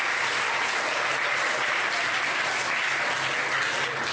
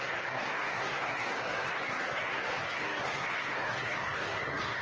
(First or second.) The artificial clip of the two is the second